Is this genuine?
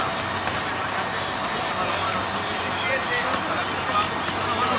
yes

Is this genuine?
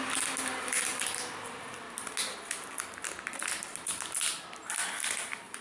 yes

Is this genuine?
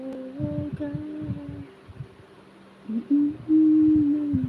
yes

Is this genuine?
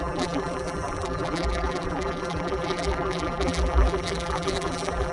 no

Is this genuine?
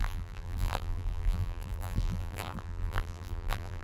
no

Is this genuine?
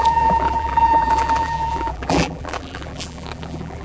no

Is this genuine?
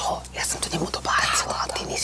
yes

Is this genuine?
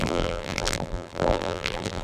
no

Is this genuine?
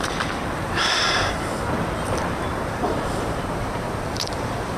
no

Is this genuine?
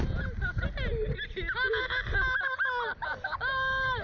yes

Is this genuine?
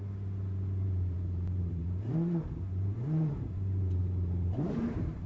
no